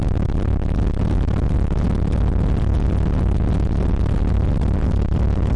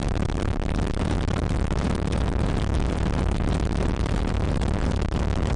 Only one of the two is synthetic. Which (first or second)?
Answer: second